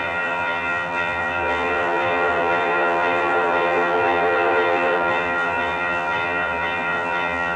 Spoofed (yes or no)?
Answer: yes